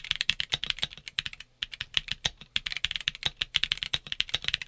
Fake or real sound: real